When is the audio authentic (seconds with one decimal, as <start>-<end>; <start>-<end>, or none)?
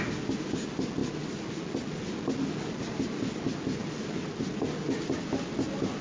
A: 0.0-6.0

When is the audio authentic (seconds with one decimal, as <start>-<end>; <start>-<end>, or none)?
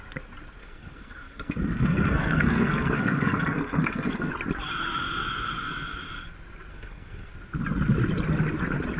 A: 0.0-0.6; 4.3-6.7; 7.3-9.0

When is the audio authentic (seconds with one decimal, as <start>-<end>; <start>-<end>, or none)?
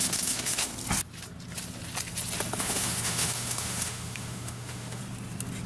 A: 0.7-2.6; 5.0-5.7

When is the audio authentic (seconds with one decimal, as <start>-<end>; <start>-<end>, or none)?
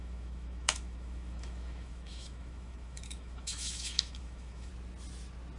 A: 4.7-5.6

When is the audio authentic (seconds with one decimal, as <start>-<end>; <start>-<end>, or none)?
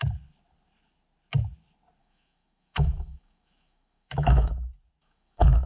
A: 0.0-2.0; 4.5-5.0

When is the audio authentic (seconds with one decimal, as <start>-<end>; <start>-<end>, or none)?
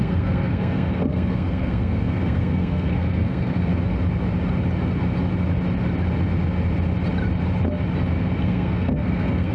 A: 3.7-8.4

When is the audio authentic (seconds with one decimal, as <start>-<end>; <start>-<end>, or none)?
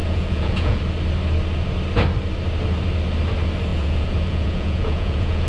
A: 0.8-3.7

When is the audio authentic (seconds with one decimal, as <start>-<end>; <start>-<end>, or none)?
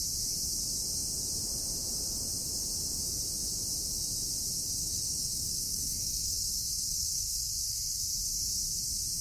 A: 0.0-4.8; 8.0-9.2